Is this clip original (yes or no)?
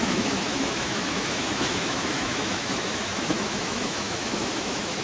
no